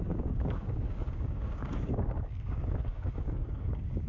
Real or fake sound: fake